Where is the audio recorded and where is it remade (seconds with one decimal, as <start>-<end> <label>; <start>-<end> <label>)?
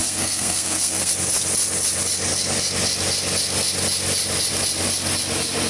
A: 0.0-1.1 remade; 1.1-5.7 recorded